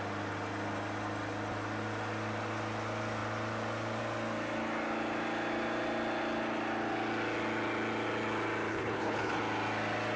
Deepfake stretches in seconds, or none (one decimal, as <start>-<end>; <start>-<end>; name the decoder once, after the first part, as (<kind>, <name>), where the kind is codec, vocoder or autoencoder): 8.7-9.4 (codec, HILCodec)